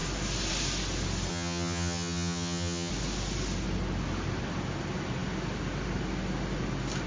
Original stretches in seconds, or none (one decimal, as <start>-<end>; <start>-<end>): 0.0-1.3; 2.9-7.1